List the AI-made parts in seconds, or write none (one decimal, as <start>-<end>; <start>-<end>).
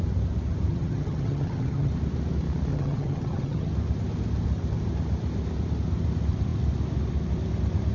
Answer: 0.7-1.9; 2.7-3.7